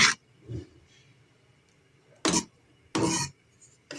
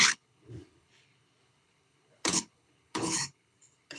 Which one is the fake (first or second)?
second